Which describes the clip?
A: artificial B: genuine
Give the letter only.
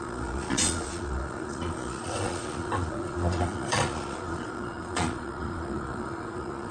A